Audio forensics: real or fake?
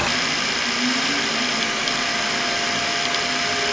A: real